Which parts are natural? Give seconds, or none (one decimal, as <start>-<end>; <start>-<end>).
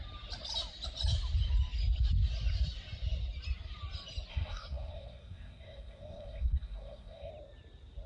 0.0-4.3; 7.3-8.1